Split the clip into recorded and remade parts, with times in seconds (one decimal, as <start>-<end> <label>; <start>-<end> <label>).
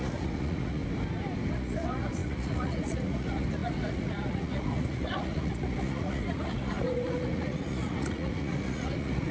0.0-0.8 remade; 0.8-1.5 recorded; 1.5-9.3 remade